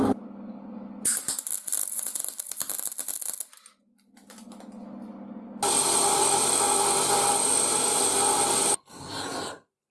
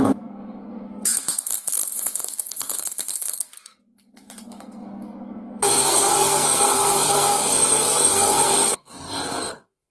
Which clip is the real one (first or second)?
first